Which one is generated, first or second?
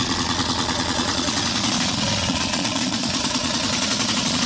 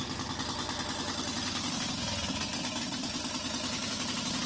first